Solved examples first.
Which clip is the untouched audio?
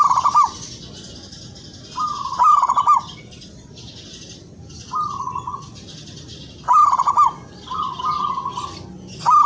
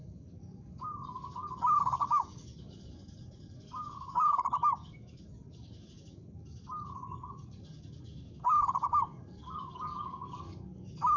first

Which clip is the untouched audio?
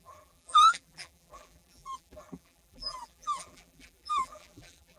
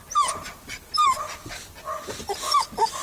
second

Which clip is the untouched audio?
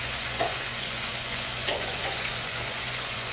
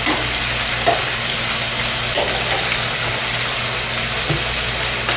second